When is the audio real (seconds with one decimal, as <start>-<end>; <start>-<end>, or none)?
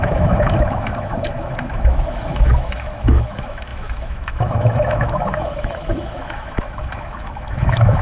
none